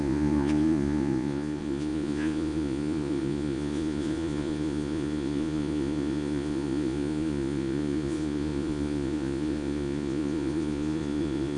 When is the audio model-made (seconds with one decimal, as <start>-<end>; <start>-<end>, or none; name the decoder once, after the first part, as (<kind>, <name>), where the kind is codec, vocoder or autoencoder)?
0.0-11.6 (vocoder, Vocos)

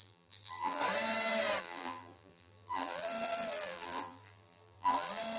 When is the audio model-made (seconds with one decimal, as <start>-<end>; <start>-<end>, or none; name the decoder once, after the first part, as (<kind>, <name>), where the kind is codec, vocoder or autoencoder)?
0.0-0.8 (vocoder, BigVGAN v2); 1.6-5.4

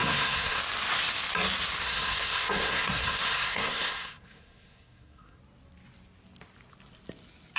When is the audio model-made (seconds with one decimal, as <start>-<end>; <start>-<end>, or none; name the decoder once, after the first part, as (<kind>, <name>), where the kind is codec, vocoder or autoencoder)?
0.0-0.6 (codec, SNAC); 1.8-5.4

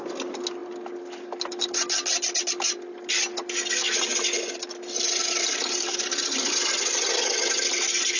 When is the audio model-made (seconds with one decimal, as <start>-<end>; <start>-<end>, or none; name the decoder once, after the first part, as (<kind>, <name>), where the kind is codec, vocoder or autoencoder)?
none

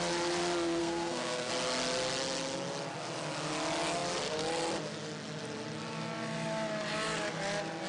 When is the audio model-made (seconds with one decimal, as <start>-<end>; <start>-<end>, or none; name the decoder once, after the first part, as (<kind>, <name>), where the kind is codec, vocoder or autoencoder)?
0.8-1.5 (codec, SNAC)